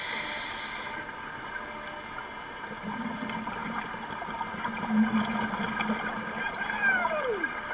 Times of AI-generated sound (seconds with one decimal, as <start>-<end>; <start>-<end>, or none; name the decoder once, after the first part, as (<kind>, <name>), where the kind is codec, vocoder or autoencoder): none